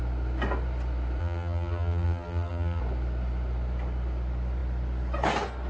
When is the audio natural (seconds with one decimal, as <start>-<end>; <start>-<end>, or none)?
0.0-1.2; 2.8-5.7